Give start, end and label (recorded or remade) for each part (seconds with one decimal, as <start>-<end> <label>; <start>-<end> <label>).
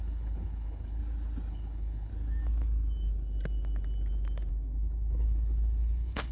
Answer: 0.0-1.0 remade; 1.0-1.5 recorded; 1.5-2.1 remade; 2.1-4.5 recorded; 4.5-6.3 remade